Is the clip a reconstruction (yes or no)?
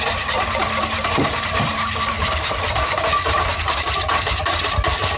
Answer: yes